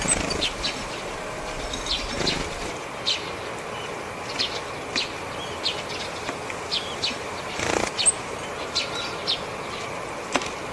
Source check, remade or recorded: recorded